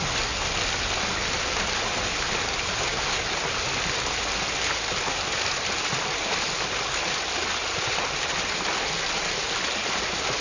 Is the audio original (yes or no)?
yes